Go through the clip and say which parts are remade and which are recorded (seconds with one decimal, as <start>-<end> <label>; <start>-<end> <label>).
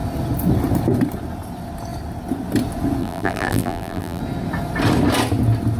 0.0-3.0 recorded; 3.0-4.2 remade; 4.2-5.8 recorded